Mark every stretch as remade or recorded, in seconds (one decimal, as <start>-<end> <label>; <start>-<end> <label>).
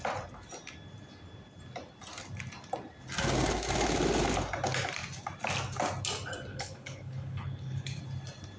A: 0.0-6.5 recorded; 6.5-8.0 remade; 8.0-8.6 recorded